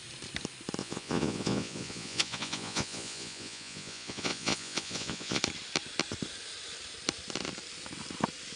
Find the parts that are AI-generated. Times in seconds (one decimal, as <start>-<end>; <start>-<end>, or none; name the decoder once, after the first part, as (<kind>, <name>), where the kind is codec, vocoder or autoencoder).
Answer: 0.8-5.4 (vocoder, Vocos)